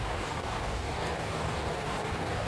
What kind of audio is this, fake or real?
fake